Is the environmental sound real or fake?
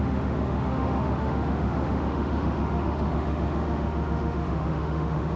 fake